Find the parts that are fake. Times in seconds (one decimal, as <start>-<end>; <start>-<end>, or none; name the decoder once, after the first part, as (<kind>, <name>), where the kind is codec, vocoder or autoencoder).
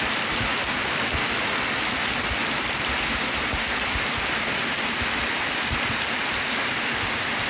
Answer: none